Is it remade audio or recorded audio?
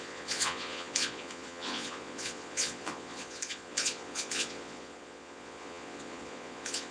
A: remade